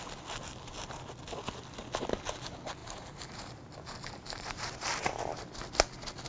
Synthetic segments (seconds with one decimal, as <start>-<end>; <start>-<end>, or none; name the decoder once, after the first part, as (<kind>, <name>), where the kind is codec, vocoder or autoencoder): 2.8-5.4 (vocoder, BigVGAN v2)